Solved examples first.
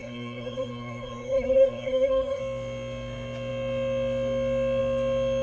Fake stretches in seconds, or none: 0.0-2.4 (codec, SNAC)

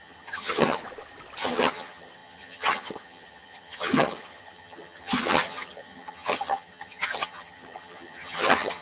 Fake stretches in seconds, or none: 0.0-0.8 (vocoder, HiFi-GAN); 1.4-8.8